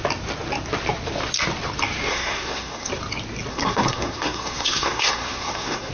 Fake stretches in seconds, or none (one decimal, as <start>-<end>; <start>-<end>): 2.1-2.9; 3.5-5.9